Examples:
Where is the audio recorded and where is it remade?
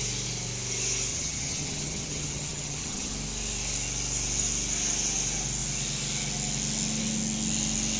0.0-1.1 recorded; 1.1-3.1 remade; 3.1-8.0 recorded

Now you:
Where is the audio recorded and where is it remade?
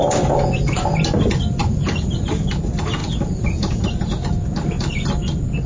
0.0-5.7 recorded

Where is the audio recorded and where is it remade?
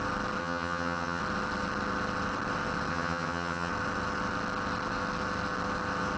0.0-0.4 recorded; 0.4-1.2 remade; 1.2-2.9 recorded; 2.9-3.7 remade; 3.7-6.2 recorded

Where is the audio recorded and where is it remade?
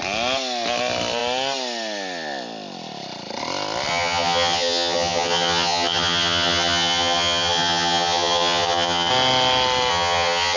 0.0-3.9 recorded; 3.9-9.1 remade; 9.1-9.9 recorded; 9.9-10.6 remade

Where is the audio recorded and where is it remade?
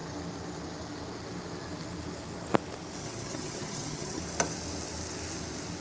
0.0-3.0 recorded; 3.0-4.2 remade; 4.2-5.8 recorded